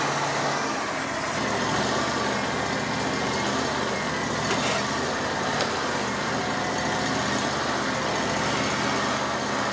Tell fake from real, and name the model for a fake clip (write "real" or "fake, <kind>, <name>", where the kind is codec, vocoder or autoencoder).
real